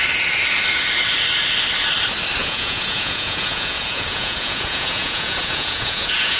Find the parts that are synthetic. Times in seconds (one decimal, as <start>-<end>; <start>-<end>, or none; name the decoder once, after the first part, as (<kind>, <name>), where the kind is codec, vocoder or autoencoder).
2.4-6.4 (vocoder, Vocos)